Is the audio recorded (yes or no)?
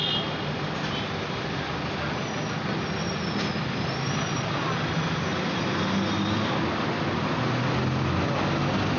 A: yes